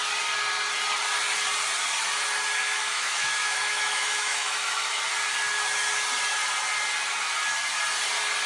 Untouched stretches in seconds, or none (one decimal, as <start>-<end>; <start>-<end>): 0.0-2.6; 5.0-8.5